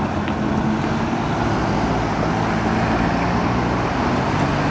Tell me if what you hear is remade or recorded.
recorded